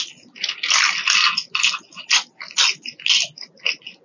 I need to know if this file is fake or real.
real